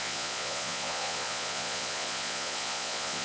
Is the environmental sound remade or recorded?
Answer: remade